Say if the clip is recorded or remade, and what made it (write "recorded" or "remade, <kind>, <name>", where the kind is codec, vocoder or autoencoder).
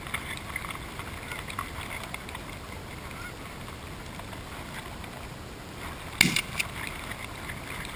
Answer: recorded